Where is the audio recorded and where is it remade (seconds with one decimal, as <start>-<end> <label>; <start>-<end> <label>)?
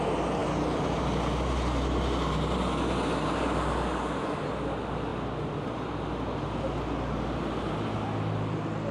0.0-0.4 recorded; 0.4-1.0 remade; 1.0-8.9 recorded